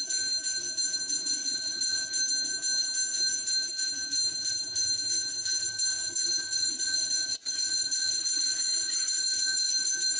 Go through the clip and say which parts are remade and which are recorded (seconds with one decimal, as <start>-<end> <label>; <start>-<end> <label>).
0.0-1.3 recorded; 1.3-2.1 remade; 2.1-5.9 recorded; 5.9-9.7 remade; 9.7-10.2 recorded